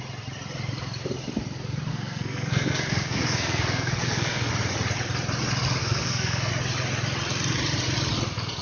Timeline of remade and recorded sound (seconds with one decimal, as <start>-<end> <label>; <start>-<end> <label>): 0.0-1.9 recorded; 1.9-4.5 remade; 4.5-5.8 recorded; 5.8-6.5 remade; 6.5-8.6 recorded